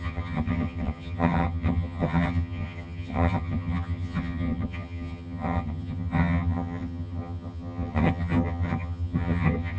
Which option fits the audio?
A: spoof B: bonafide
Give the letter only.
A